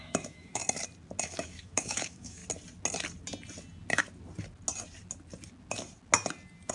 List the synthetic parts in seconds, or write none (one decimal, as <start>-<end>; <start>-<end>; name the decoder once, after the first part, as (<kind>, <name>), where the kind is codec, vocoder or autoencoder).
0.0-0.6 (autoencoder, DAC-VAE); 1.2-2.4